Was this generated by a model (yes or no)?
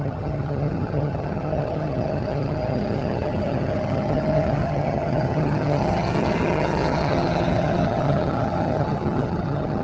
yes